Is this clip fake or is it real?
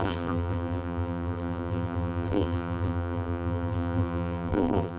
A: fake